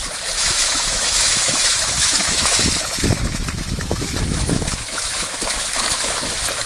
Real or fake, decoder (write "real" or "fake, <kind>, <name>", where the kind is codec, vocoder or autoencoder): fake, autoencoder, DAC-VAE